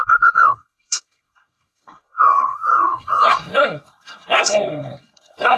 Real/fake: fake